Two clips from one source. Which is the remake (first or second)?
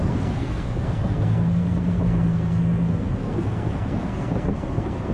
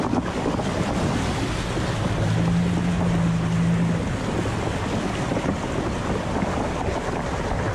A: first